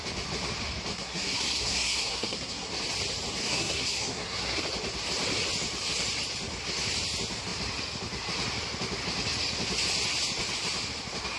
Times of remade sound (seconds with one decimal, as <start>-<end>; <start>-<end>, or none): 0.9-2.7; 3.4-4.6